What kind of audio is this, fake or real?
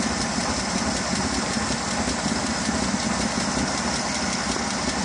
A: real